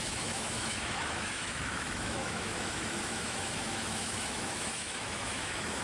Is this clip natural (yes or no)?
no